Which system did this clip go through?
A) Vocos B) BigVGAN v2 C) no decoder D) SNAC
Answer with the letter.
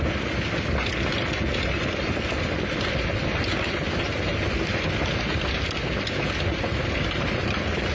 C